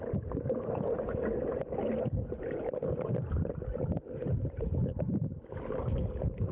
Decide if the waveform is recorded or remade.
recorded